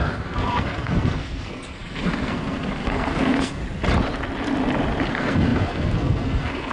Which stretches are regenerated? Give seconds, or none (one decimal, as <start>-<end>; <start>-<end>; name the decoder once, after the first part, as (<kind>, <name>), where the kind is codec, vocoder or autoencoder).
0.0-3.6 (codec, SNAC); 5.1-6.7